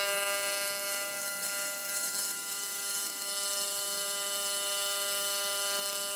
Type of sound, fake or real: fake